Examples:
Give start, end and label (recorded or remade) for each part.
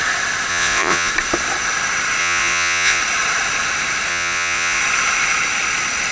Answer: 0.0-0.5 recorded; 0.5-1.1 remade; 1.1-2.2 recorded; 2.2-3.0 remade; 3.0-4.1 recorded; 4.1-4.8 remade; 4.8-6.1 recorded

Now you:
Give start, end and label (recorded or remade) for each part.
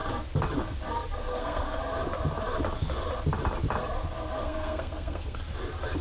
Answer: 0.0-1.2 recorded; 1.2-1.8 remade; 1.8-4.4 recorded; 4.4-5.4 remade; 5.4-6.0 recorded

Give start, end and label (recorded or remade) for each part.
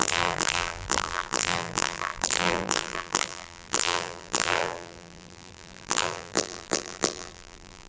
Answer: 0.0-7.9 remade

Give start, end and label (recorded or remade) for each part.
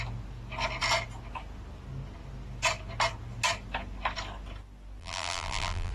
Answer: 0.0-5.0 recorded; 5.0-5.9 remade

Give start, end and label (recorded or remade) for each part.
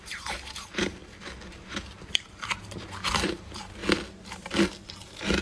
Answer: 0.0-1.0 remade; 1.0-1.5 recorded; 1.5-3.8 remade; 3.8-5.4 recorded